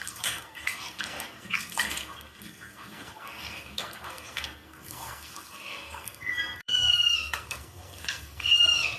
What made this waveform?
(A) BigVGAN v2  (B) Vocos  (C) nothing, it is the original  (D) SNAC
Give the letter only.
D